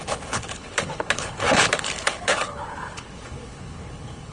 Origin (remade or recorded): remade